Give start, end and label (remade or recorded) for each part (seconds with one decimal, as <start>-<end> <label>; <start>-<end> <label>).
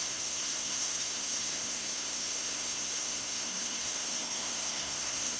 0.0-5.4 remade